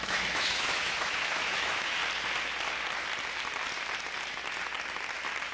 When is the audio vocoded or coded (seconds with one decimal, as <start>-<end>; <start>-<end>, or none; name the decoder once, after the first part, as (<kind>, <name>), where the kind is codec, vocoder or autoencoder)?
0.0-2.0 (autoencoder, DAC-VAE)